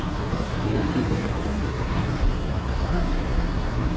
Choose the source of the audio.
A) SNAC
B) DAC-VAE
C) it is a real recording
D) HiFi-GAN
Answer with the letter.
A